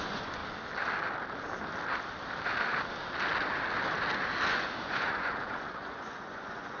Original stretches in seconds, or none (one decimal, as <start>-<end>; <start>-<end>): 0.4-4.5